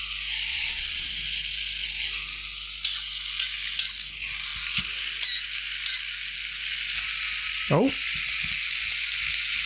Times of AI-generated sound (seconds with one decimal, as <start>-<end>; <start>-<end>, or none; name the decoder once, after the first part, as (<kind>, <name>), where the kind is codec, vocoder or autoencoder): 0.5-1.1 (vocoder, Vocos)